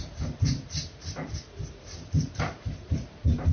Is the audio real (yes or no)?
no